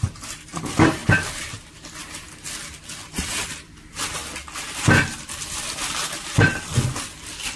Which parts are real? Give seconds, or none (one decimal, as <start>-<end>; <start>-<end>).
0.5-7.6